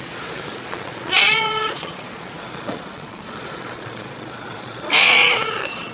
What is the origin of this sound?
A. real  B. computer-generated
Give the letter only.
B